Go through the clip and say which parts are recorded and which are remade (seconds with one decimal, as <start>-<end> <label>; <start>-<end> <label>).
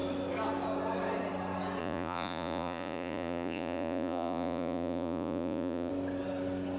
0.0-1.8 recorded; 1.8-5.9 remade; 5.9-6.8 recorded